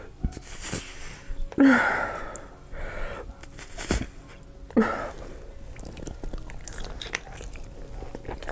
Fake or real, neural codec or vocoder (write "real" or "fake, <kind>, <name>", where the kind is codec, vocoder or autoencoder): real